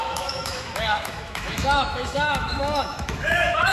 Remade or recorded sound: remade